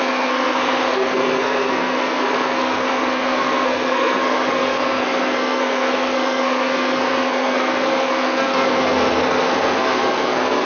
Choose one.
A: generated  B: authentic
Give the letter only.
A